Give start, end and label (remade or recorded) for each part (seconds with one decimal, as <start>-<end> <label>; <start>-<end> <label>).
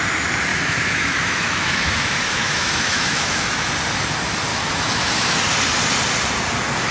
0.0-0.5 recorded; 0.5-3.7 remade; 3.7-4.5 recorded; 4.5-5.4 remade; 5.4-6.9 recorded